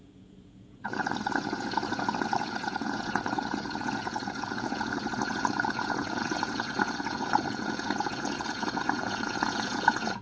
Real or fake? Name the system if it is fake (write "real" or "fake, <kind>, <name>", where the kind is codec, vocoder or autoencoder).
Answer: fake, vocoder, Vocos